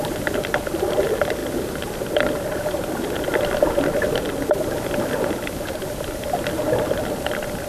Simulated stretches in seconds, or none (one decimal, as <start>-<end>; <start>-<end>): none